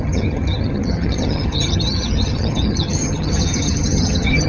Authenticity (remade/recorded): remade